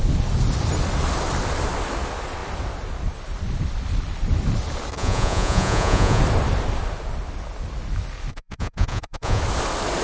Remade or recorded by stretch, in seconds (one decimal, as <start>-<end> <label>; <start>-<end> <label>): 0.0-4.9 recorded; 4.9-6.2 remade; 6.2-8.3 recorded; 8.3-9.4 remade; 9.4-10.0 recorded